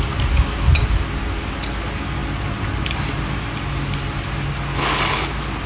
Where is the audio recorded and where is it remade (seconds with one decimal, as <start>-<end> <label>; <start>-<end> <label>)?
0.0-5.7 recorded